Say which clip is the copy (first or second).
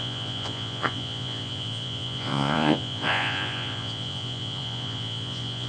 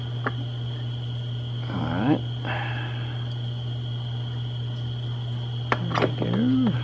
first